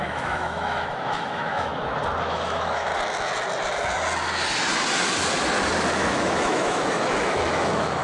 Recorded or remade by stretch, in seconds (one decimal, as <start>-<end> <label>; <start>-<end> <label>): 0.0-1.7 remade; 1.7-2.2 recorded; 2.2-2.9 remade; 2.9-6.0 recorded; 6.0-8.0 remade

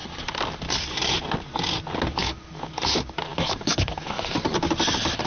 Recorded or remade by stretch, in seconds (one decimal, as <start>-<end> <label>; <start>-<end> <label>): 0.0-2.2 recorded; 2.2-2.7 remade; 2.7-3.3 recorded; 3.3-4.2 remade; 4.2-5.3 recorded

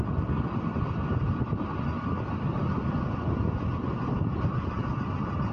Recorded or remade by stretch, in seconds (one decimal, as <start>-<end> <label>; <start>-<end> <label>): 0.0-5.5 recorded

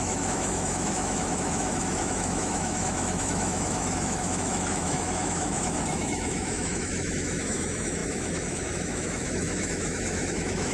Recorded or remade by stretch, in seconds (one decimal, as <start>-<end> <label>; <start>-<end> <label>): 0.0-10.7 remade

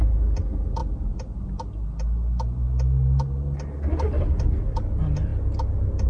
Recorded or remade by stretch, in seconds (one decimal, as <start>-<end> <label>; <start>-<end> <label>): 0.0-6.1 recorded

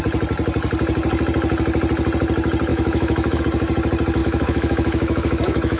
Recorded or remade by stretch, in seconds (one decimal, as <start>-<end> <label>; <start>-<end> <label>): 0.0-2.7 recorded; 2.7-3.4 remade; 3.4-4.2 recorded; 4.2-5.8 remade

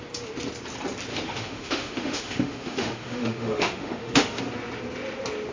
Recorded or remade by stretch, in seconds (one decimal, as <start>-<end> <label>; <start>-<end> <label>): 0.0-1.1 recorded; 1.1-4.4 remade; 4.4-5.5 recorded